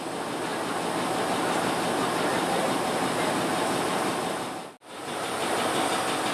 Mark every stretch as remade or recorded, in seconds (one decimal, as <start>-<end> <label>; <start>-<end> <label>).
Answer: 0.0-2.3 recorded; 2.3-5.5 remade; 5.5-6.3 recorded